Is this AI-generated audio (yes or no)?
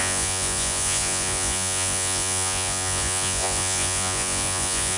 yes